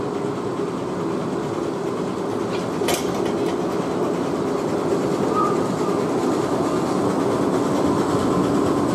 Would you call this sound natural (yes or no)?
yes